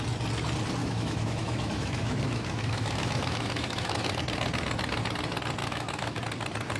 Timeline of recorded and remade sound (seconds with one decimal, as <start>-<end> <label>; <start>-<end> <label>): 0.0-0.8 recorded; 0.8-4.2 remade; 4.2-5.6 recorded; 5.6-6.2 remade; 6.2-6.8 recorded